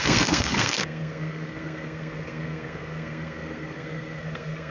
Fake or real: fake